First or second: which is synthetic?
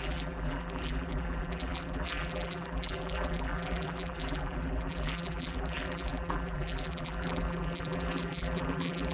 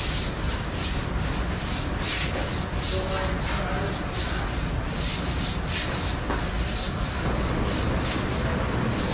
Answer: first